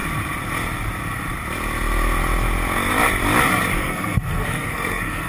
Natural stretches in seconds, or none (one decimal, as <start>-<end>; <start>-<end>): 0.0-3.8